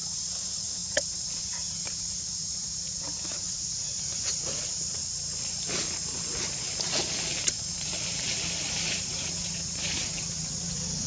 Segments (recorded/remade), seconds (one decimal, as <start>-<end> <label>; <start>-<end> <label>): 0.0-5.0 remade; 5.0-7.4 recorded; 7.4-7.9 remade; 7.9-8.9 recorded; 8.9-11.1 remade